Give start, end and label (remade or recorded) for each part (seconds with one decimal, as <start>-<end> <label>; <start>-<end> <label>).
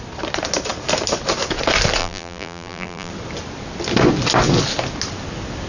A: 0.0-2.0 recorded; 2.0-3.1 remade; 3.1-5.7 recorded